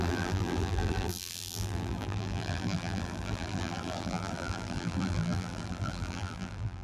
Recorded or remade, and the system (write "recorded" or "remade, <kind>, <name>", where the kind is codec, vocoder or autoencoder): remade, vocoder, BigVGAN v2